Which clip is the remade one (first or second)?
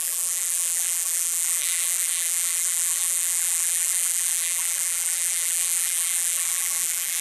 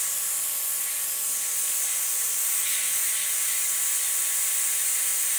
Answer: first